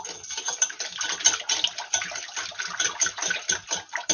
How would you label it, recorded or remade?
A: recorded